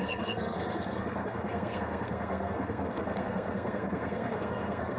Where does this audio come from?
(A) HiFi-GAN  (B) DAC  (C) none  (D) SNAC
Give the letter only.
D